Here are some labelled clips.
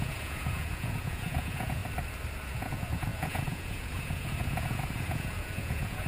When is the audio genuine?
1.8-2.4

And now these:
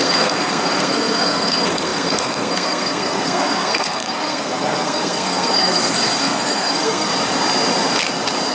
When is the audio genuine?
7.1-8.5

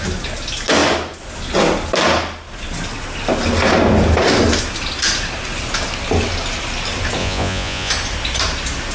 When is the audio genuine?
0.0-7.2; 7.9-8.9

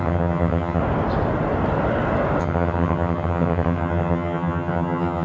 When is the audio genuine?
0.8-2.4

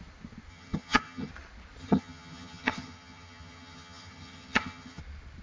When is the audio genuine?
0.0-0.5; 1.3-1.8; 5.0-5.4

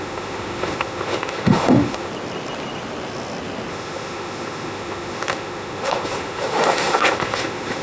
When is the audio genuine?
2.1-3.7

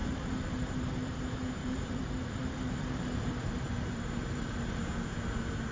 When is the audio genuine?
1.2-1.6; 4.8-5.7